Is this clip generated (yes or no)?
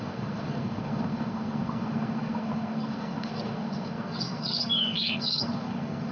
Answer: yes